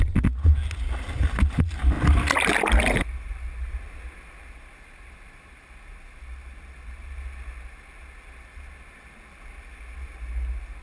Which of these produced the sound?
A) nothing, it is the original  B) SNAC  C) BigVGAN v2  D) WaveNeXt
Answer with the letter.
A